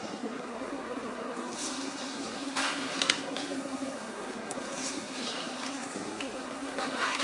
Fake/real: fake